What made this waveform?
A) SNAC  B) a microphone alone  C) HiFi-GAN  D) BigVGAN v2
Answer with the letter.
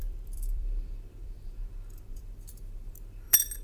D